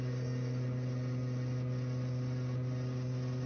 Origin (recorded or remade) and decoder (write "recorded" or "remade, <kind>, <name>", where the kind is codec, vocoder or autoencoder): recorded